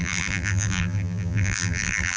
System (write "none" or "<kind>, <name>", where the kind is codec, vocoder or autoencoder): vocoder, BigVGAN v2